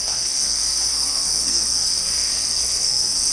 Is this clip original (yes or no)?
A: no